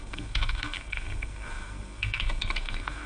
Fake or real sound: fake